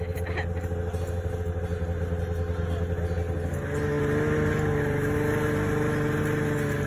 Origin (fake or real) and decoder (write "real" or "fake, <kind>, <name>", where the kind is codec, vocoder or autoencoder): real